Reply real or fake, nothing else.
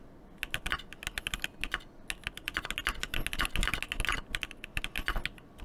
real